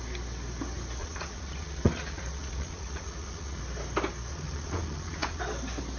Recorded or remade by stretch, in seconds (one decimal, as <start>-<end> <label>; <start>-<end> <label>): 0.0-1.0 recorded; 1.0-3.6 remade; 3.6-4.3 recorded; 4.3-5.4 remade; 5.4-6.0 recorded

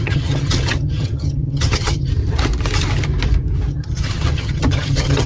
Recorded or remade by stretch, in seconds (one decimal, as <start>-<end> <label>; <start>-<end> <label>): 0.0-2.1 remade; 2.1-3.7 recorded; 3.7-5.3 remade

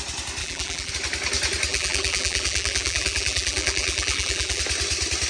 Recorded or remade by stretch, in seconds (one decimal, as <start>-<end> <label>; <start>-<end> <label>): 0.0-0.4 recorded; 0.4-0.9 remade; 0.9-1.7 recorded; 1.7-4.6 remade; 4.6-5.3 recorded

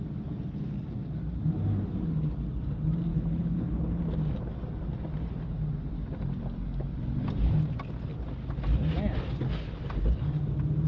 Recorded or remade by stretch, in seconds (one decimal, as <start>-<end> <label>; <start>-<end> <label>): 0.0-3.1 recorded; 3.1-4.0 remade; 4.0-10.9 recorded

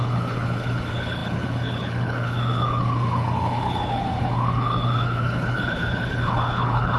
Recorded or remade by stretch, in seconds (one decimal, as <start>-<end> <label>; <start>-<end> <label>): 0.0-7.0 remade

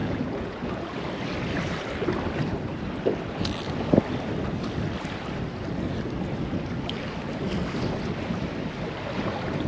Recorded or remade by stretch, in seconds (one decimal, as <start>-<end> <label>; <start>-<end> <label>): 0.0-0.8 remade; 0.8-9.7 recorded

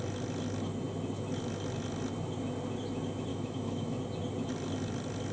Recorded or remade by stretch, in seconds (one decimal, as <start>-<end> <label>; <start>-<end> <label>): 0.0-3.3 recorded; 3.3-4.0 remade; 4.0-5.3 recorded

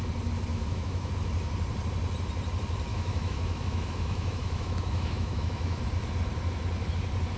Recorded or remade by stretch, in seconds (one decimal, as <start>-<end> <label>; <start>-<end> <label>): 0.0-0.5 recorded; 0.5-1.1 remade; 1.1-2.9 recorded; 2.9-5.8 remade; 5.8-7.4 recorded